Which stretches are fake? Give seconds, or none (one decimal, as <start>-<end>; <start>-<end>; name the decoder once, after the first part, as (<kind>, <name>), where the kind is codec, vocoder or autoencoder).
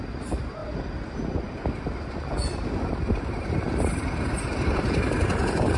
0.0-0.6 (vocoder, BigVGAN v2); 2.8-5.8